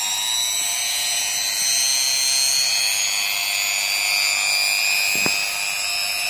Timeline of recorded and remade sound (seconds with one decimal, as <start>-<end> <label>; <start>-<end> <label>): 0.0-6.3 recorded